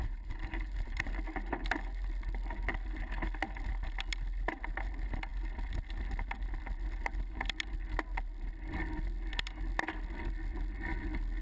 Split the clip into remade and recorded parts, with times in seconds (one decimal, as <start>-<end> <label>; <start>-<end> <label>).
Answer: 0.0-1.1 remade; 1.1-11.4 recorded